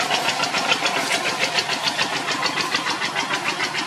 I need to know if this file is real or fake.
real